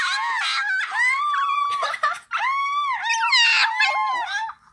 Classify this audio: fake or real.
real